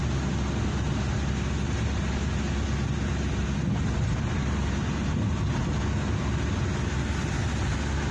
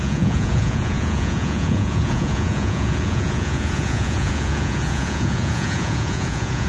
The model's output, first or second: second